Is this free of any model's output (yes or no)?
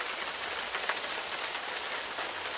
yes